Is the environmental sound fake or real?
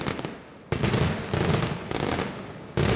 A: real